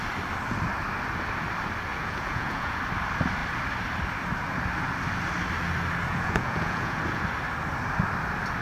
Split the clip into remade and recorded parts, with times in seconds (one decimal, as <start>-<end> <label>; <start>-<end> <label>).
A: 0.0-1.9 recorded; 1.9-2.8 remade; 2.8-6.1 recorded; 6.1-7.0 remade; 7.0-8.6 recorded